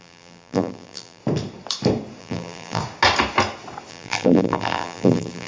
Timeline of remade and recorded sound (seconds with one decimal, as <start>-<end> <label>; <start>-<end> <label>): 0.0-1.2 remade; 1.2-2.2 recorded; 2.2-2.8 remade; 2.8-3.9 recorded; 3.9-5.5 remade